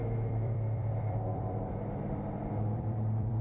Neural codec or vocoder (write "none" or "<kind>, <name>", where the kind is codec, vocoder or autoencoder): vocoder, BigVGAN v2